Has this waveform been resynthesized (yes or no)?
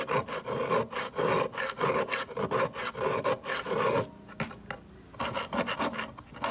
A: no